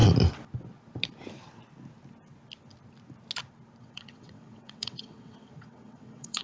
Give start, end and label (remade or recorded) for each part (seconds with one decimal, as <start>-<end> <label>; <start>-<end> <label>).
0.0-3.8 recorded; 3.8-6.4 remade